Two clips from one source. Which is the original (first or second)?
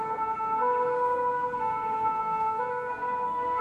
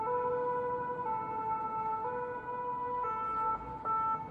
second